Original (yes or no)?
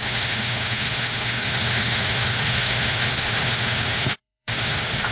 no